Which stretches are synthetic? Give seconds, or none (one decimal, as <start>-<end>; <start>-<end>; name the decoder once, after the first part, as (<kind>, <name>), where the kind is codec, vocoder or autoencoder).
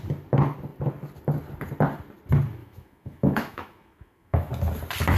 2.6-4.5 (autoencoder, DAC-VAE)